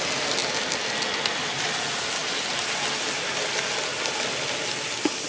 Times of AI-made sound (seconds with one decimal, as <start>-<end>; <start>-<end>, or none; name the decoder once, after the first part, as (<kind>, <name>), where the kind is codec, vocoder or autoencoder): none